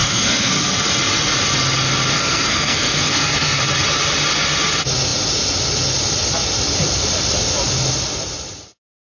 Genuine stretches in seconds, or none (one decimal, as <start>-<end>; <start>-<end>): 0.6-2.2; 3.6-9.1